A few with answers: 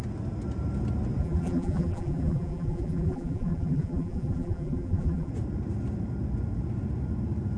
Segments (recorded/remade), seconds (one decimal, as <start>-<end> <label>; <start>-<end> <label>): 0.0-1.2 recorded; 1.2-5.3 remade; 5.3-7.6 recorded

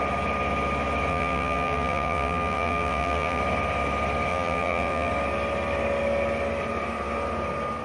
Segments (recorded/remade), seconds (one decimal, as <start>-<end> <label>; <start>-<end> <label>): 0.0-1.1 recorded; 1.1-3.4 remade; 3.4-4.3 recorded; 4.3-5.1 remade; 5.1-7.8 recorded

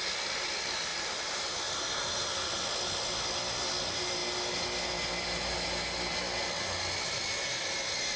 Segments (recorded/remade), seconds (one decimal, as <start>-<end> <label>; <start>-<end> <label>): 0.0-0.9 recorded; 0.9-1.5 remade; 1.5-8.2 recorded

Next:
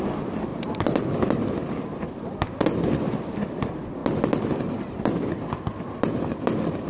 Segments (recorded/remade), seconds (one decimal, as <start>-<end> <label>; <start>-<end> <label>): 0.0-0.5 remade; 0.5-2.0 recorded; 2.0-2.6 remade; 2.6-3.4 recorded; 3.4-6.9 remade

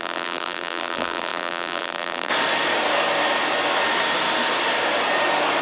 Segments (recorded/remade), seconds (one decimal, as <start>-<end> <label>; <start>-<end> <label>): 0.0-2.3 remade; 2.3-5.6 recorded

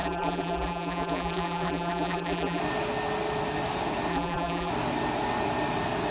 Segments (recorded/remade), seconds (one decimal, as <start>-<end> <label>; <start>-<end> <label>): 0.0-2.6 remade; 2.6-4.1 recorded; 4.1-4.7 remade; 4.7-6.1 recorded